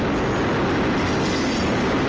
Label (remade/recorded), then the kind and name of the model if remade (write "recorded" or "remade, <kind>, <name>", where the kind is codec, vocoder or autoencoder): recorded